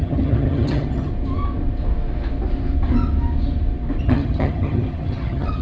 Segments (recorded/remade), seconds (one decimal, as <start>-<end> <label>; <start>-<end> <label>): 0.0-1.1 remade; 1.1-4.0 recorded; 4.0-5.6 remade